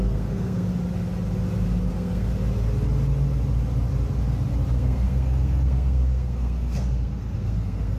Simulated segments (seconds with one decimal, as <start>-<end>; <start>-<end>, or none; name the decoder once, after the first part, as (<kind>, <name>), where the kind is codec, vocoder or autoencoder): 0.0-0.7 (codec, SNAC); 1.9-2.3; 4.7-8.0

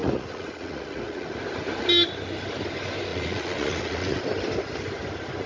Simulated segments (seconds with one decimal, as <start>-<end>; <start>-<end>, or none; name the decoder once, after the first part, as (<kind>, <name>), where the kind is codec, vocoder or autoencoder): 0.0-1.3 (vocoder, Vocos); 3.1-4.2

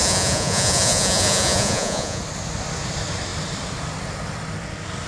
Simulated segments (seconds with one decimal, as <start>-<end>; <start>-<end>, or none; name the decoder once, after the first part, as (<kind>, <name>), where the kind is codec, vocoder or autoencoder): 0.0-2.2 (vocoder, Vocos)

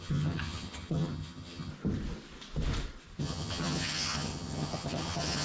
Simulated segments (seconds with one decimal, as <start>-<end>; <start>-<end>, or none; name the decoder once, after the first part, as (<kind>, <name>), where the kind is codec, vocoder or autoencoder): 0.0-1.7 (vocoder, HiFi-GAN); 3.2-5.4

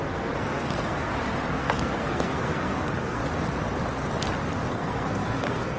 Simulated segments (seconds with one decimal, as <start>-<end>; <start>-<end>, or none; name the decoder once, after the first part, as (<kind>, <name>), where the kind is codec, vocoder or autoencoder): 0.0-1.1 (codec, SNAC); 1.6-3.2; 4.7-5.8

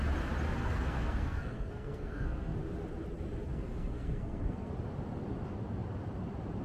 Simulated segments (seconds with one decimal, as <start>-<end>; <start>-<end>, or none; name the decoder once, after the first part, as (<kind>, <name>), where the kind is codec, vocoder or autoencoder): 0.6-2.6 (codec, SNAC); 3.5-4.7

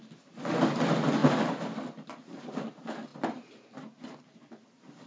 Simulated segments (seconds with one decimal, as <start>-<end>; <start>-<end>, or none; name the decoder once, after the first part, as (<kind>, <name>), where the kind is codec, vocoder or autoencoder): none

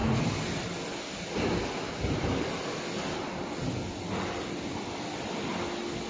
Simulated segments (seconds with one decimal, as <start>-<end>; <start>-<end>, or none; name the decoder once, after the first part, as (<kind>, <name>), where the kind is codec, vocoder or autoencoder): none